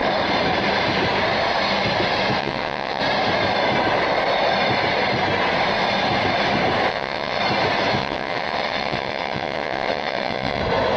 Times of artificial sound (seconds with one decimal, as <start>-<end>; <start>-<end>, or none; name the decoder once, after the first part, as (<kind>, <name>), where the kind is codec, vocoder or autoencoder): 2.4-3.0 (vocoder, WaveNeXt); 6.9-7.4; 8.0-10.6